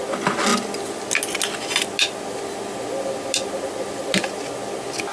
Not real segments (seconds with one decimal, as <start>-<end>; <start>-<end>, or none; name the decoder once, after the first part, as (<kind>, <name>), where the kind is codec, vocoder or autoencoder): none